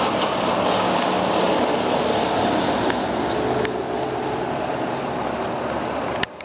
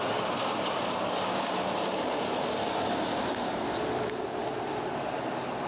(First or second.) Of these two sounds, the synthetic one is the second